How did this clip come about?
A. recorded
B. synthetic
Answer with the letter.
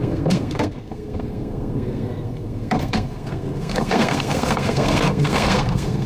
B